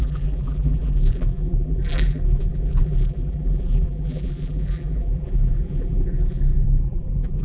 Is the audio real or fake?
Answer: fake